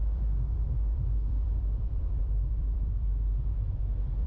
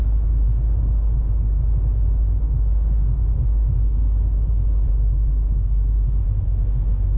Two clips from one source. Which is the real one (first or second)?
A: second